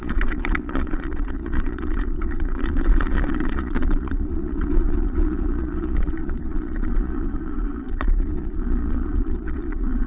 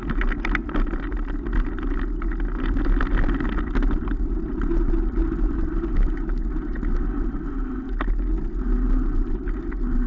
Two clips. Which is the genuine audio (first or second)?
second